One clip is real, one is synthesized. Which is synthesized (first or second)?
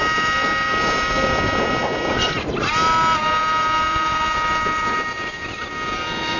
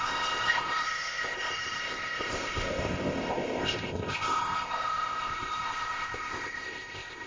second